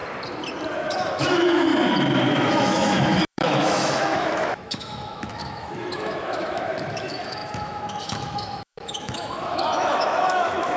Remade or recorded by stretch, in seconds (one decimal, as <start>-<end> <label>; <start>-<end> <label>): 0.0-1.1 recorded; 1.1-1.7 remade; 1.7-2.3 recorded; 2.3-10.8 remade